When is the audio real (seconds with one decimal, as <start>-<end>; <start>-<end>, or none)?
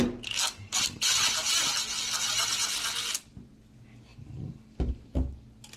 0.0-5.8